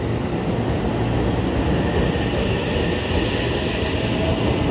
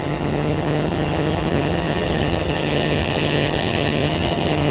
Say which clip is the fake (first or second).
second